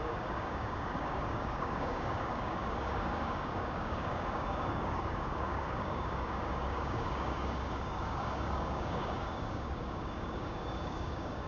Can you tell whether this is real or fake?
fake